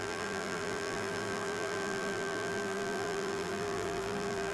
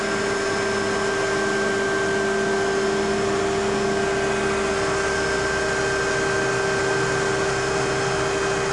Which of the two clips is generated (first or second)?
first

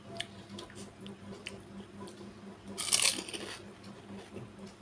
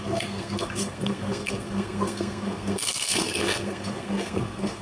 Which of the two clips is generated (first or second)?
second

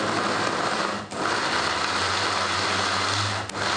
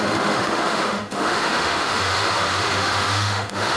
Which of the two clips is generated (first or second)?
second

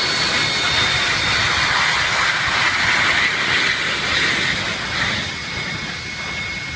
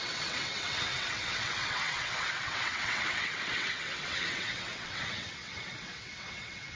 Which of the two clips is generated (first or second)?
second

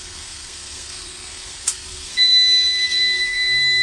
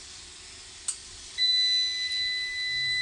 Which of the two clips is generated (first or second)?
first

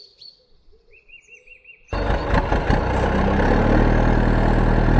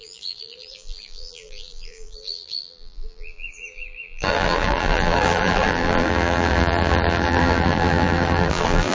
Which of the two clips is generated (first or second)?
second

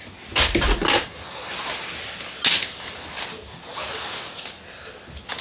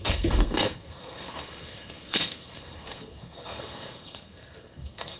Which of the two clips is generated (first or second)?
second